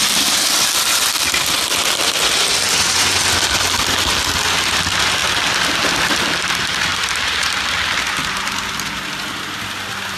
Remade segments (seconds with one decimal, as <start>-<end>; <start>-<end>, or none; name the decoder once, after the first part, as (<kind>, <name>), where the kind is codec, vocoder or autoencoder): none